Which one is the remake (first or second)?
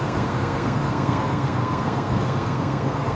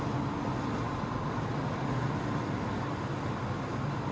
first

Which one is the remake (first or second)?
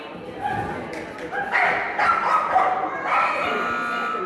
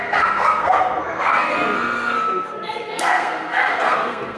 second